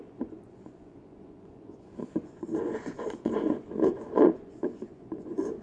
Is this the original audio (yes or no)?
no